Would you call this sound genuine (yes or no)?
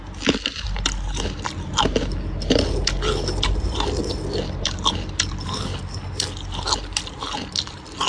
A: yes